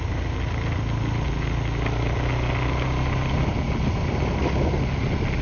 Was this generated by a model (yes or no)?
no